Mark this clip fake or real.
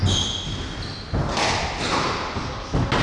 real